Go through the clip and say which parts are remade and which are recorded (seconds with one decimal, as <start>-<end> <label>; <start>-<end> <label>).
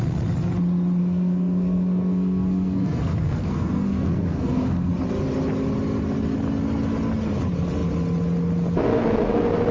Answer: 0.0-1.0 recorded; 1.0-4.9 remade; 4.9-9.7 recorded